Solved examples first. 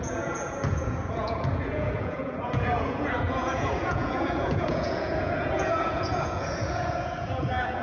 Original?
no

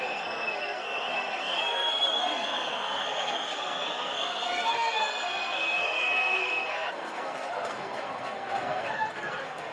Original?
no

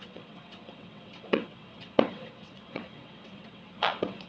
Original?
no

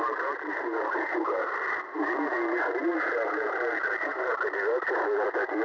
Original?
yes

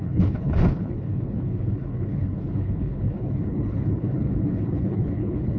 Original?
no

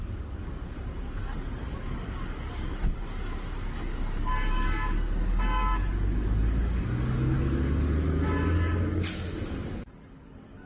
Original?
no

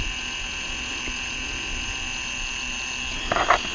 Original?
yes